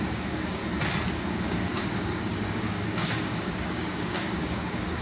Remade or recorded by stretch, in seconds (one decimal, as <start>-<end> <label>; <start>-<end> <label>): 0.0-0.6 remade; 0.6-1.1 recorded; 1.1-5.0 remade